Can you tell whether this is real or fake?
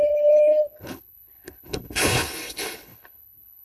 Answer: fake